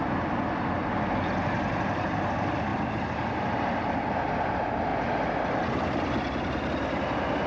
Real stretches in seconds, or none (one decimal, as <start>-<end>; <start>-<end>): 0.0-7.5